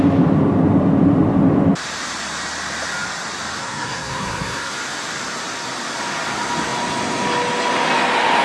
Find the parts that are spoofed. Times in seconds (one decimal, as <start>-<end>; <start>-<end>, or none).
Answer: 3.6-4.7